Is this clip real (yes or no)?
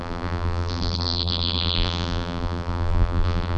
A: no